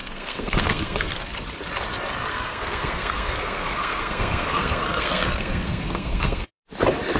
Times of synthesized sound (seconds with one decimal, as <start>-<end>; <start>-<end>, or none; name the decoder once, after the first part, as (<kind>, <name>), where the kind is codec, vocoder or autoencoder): 0.0-1.1 (codec, SNAC); 2.3-6.6